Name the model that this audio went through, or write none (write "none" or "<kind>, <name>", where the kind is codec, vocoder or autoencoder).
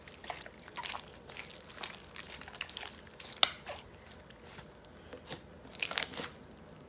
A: none